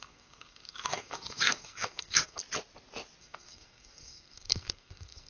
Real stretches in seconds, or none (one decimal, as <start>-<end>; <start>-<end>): 2.4-3.2